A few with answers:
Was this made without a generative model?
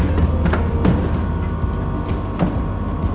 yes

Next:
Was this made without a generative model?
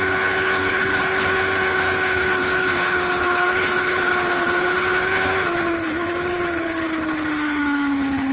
no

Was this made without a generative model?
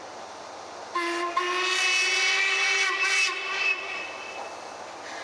yes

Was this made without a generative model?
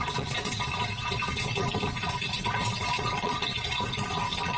no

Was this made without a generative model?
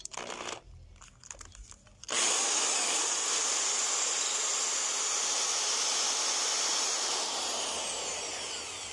yes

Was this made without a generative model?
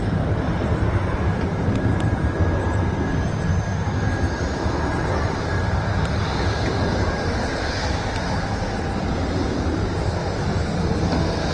yes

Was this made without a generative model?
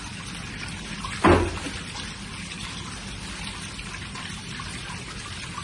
yes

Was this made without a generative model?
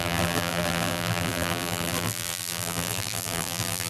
no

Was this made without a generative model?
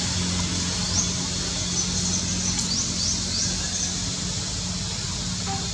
yes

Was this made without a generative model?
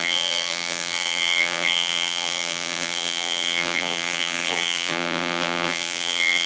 no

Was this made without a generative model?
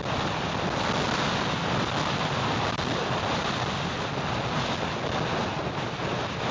yes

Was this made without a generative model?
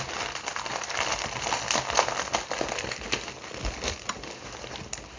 yes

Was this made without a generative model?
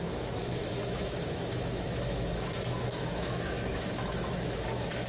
no